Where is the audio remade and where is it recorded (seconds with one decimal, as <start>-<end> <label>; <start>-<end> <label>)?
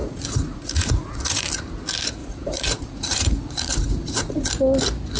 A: 0.0-1.5 remade; 1.5-2.2 recorded; 2.2-4.5 remade; 4.5-5.2 recorded